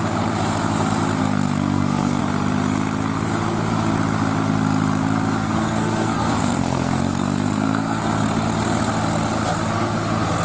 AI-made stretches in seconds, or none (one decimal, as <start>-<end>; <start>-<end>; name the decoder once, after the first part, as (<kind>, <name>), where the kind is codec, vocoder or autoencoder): 1.2-2.2 (codec, SNAC); 5.4-8.0